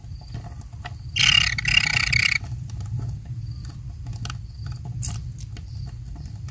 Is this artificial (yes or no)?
yes